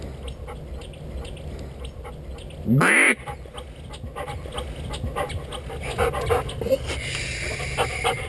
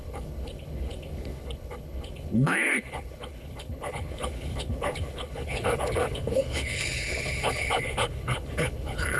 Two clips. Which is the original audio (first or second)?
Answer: first